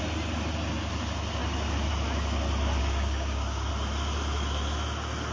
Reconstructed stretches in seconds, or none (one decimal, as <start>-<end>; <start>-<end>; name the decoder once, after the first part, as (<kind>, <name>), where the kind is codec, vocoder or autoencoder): 2.8-3.7 (codec, DAC)